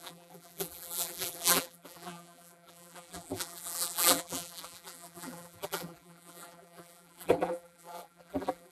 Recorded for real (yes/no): no